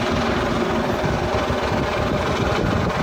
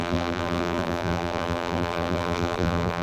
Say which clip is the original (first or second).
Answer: first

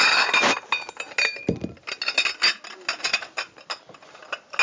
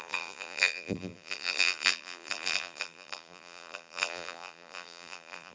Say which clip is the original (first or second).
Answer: first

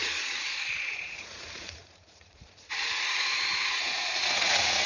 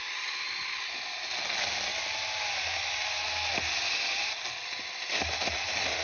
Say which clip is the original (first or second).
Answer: second